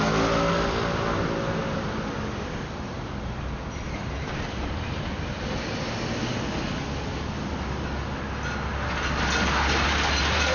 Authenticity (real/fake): real